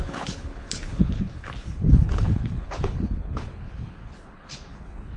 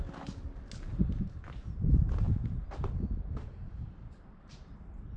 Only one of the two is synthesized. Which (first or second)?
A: first